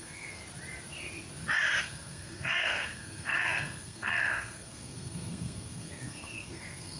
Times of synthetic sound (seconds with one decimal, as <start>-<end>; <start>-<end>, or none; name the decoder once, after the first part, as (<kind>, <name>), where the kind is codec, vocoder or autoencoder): 0.0-0.4 (codec, SNAC); 1.8-7.0